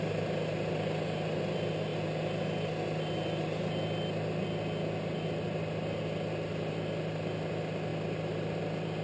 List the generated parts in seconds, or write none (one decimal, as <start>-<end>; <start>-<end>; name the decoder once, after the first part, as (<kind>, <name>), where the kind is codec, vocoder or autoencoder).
none